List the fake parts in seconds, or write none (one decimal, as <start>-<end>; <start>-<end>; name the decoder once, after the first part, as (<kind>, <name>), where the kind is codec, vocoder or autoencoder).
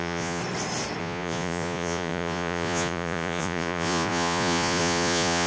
0.0-0.4 (vocoder, Vocos); 1.0-5.5